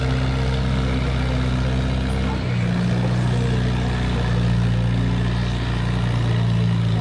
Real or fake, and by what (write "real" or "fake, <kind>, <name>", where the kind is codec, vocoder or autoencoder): real